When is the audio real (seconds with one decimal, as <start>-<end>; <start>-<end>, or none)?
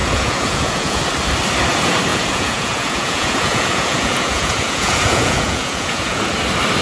1.0-2.1; 6.2-6.8